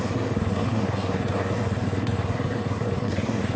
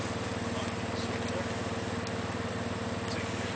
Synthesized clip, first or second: first